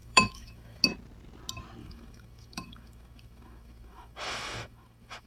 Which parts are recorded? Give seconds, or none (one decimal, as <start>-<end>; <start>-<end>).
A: 0.8-1.8